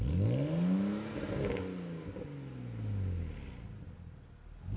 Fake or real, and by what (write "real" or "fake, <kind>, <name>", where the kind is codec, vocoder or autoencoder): real